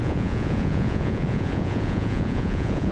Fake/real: fake